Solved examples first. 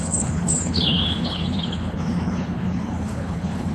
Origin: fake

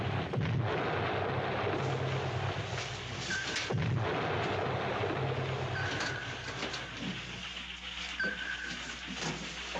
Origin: real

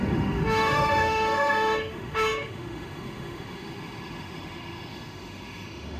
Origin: fake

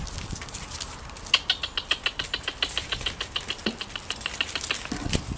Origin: real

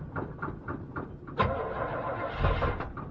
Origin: real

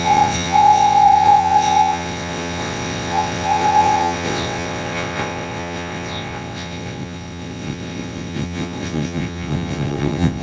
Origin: fake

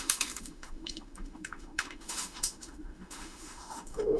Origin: fake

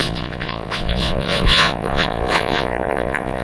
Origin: fake